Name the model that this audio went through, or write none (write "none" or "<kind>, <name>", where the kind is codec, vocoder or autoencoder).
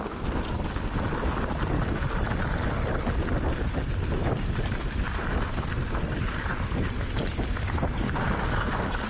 vocoder, BigVGAN v2